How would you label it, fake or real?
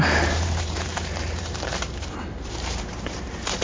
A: fake